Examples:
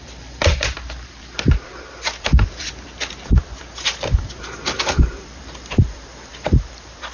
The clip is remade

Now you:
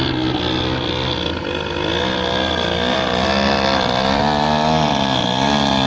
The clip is recorded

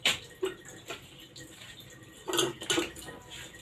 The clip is recorded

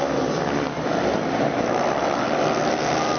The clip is recorded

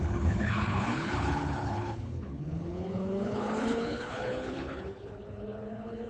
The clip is remade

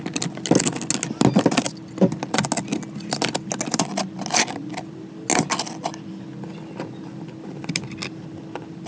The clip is recorded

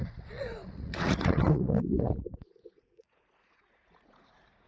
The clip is remade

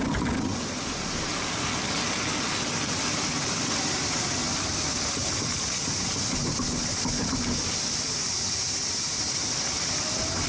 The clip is recorded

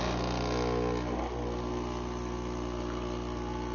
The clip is recorded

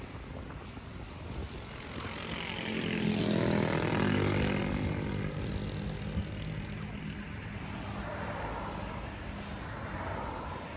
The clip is recorded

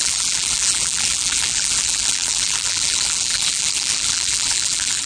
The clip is remade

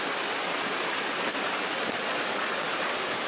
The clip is recorded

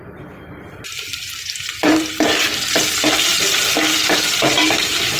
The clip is remade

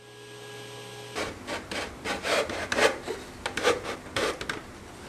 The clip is recorded